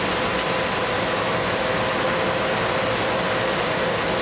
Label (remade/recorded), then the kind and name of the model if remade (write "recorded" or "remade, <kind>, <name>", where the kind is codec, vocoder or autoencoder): recorded